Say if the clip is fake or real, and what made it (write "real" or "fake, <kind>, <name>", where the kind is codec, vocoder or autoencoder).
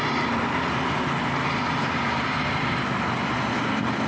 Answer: real